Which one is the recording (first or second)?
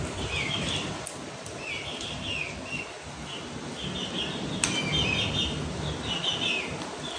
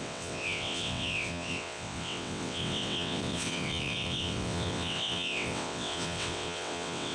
first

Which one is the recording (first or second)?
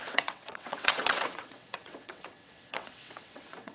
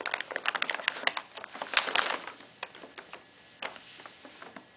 second